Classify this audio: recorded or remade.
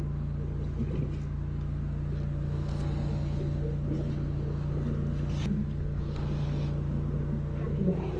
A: recorded